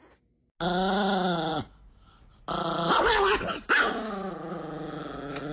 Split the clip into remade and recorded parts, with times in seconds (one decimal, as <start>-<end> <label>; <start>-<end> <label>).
0.0-5.5 recorded